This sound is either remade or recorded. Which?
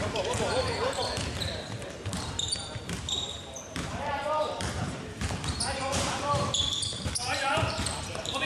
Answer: remade